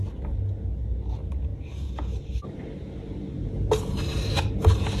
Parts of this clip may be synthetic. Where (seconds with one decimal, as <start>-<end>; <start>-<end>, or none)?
none